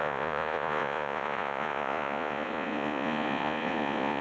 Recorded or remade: remade